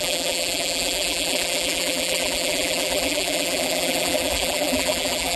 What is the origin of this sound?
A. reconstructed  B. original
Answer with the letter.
A